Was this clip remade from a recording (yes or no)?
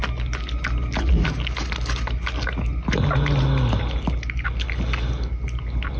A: no